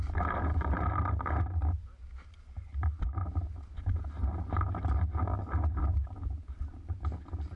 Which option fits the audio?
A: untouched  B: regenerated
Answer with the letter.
A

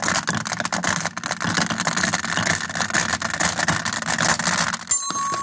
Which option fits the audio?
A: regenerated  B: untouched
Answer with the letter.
B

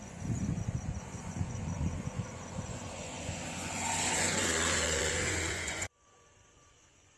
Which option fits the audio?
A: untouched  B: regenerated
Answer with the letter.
B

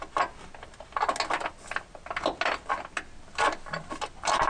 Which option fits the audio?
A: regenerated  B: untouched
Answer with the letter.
B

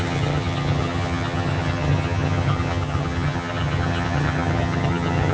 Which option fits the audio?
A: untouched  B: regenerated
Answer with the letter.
B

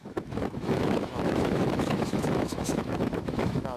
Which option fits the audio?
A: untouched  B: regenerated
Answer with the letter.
B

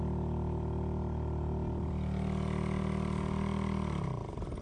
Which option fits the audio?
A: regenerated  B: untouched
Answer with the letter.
B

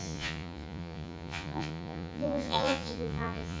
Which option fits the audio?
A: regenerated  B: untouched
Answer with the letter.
A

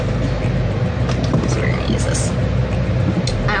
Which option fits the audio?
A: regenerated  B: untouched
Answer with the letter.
B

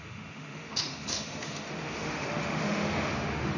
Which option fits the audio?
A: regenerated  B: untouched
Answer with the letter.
A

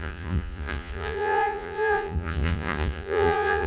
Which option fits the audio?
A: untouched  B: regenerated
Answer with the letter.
B